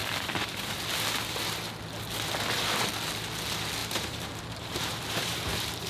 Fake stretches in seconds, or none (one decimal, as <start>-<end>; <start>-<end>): 0.0-0.8; 3.8-5.9